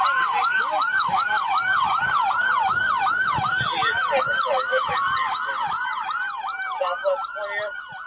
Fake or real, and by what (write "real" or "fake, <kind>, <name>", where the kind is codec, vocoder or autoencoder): real